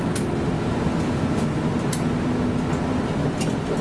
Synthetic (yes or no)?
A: no